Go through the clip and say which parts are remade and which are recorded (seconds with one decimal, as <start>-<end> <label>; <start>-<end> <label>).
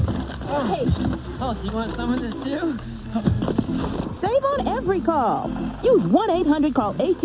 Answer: 0.0-7.2 recorded